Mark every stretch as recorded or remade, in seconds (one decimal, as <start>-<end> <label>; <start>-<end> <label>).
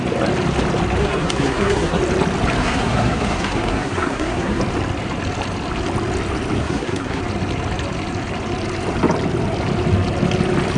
0.0-1.0 recorded; 1.0-2.0 remade; 2.0-2.6 recorded; 2.6-4.6 remade; 4.6-6.6 recorded; 6.6-7.2 remade; 7.2-10.8 recorded